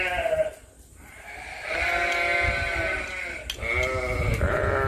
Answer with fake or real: real